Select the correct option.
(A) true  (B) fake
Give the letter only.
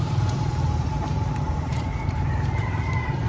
B